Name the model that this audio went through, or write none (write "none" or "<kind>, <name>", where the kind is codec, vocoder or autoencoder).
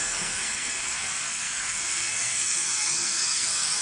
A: codec, SNAC